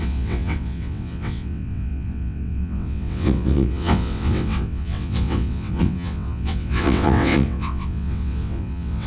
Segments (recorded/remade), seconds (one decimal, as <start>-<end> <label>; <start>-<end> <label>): 0.0-9.1 remade